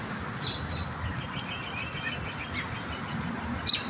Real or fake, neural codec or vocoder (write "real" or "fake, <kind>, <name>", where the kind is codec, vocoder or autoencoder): real